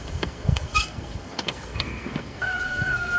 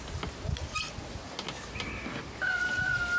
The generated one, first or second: first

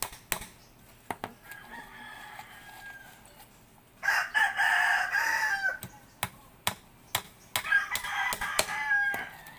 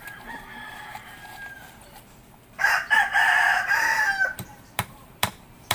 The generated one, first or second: second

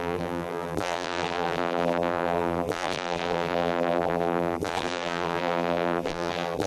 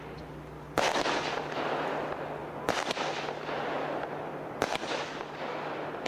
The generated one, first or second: first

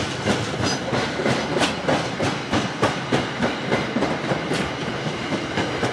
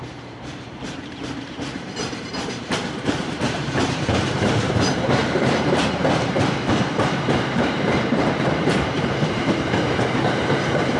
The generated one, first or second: second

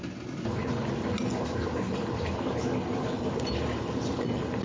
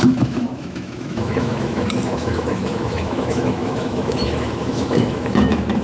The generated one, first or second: second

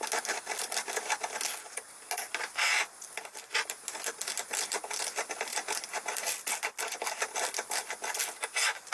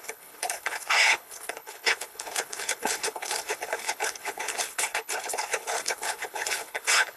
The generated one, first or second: second